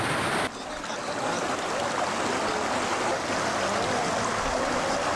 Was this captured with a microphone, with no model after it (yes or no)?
yes